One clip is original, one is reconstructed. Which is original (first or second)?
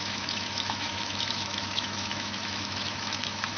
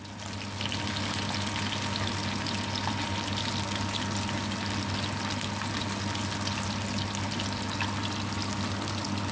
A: second